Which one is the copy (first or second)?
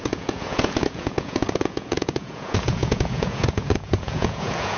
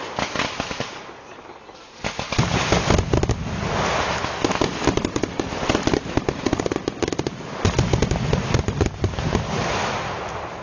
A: first